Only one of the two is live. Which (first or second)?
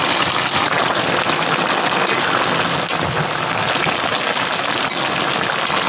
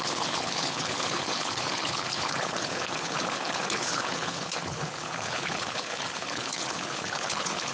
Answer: first